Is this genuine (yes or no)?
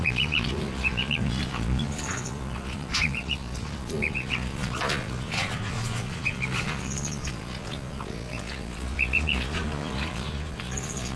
no